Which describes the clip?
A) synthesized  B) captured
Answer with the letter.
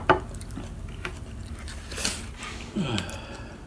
B